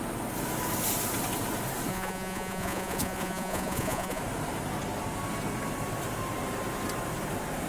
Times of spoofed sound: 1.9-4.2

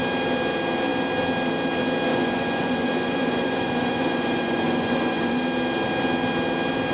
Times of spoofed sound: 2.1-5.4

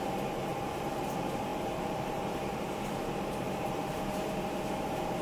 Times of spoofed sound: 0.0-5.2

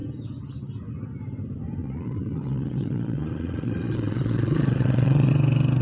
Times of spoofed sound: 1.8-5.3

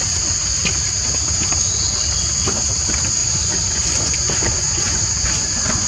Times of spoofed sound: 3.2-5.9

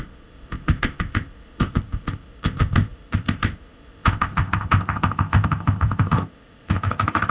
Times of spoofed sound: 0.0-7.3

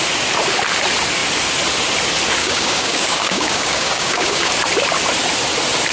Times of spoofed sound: 2.4-4.5

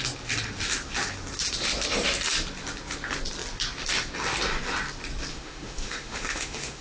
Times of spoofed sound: 5.3-6.8